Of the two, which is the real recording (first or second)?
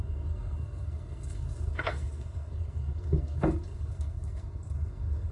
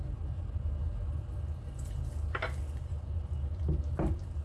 second